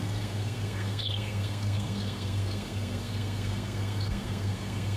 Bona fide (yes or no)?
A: no